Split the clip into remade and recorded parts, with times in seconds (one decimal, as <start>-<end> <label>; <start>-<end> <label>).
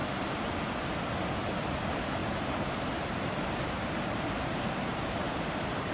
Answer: 0.0-2.2 recorded; 2.2-5.9 remade